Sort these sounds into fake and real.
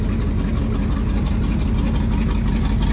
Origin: real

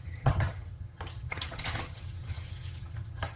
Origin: fake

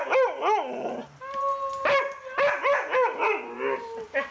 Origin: real